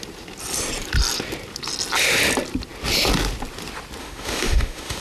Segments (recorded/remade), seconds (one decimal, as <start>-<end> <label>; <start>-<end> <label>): 0.0-4.0 recorded; 4.0-5.0 remade